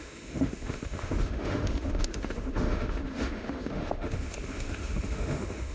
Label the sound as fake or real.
fake